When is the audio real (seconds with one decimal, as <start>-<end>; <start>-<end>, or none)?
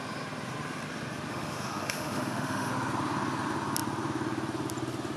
0.0-1.3; 2.7-5.2